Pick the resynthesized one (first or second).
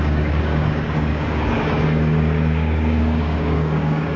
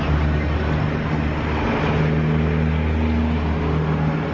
first